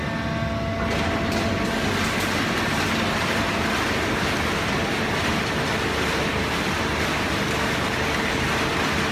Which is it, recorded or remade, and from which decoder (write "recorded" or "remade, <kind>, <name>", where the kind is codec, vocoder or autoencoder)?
recorded